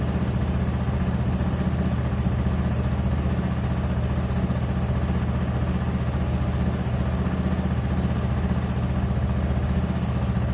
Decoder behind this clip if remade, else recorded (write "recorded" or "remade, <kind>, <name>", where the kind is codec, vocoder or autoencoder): recorded